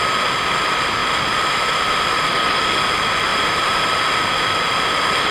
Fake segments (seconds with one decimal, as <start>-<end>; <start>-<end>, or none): 1.0-2.6; 3.3-4.0